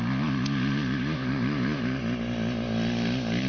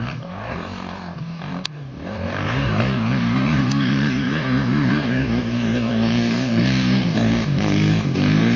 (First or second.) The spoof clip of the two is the second